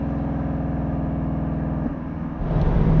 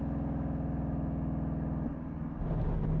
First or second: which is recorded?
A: second